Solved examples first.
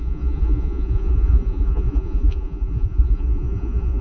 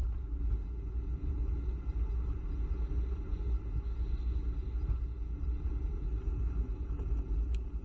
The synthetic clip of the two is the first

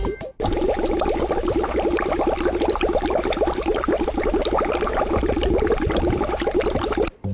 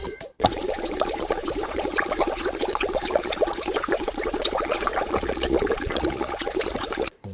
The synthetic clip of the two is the second